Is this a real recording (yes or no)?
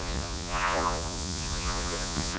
no